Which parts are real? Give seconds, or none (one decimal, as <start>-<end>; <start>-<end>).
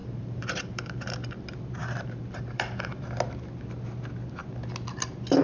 1.1-1.8; 3.0-5.4